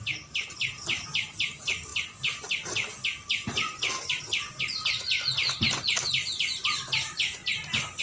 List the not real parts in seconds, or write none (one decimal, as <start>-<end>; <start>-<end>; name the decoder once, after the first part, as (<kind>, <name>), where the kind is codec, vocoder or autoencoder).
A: none